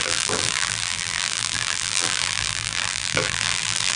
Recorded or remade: remade